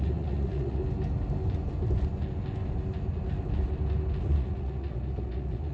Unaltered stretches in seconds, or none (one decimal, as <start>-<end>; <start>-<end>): 0.8-4.2